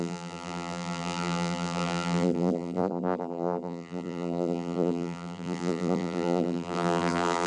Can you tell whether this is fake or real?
fake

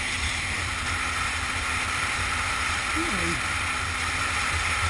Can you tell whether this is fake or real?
fake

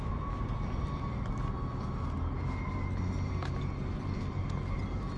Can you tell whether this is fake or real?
real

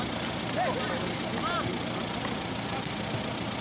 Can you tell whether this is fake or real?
real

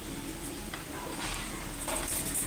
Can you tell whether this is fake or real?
real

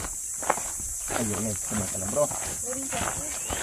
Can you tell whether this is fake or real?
real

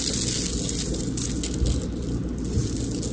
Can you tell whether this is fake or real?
real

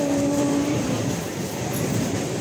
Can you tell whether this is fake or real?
fake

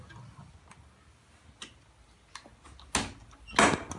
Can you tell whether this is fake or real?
real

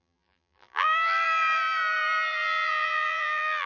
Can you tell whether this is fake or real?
fake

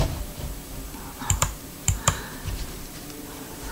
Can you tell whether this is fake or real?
fake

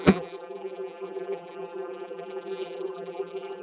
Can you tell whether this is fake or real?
fake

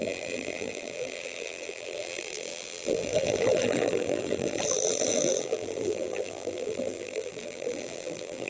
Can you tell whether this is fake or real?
fake